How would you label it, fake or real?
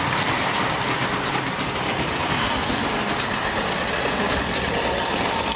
real